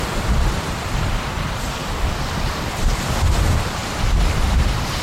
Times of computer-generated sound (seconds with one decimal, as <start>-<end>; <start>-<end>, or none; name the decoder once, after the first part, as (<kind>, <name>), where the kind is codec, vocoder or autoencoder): 0.0-1.8 (vocoder, BigVGAN v2); 2.7-5.0